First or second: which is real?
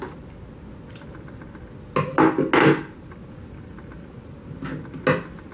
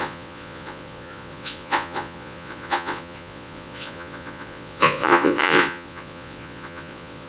first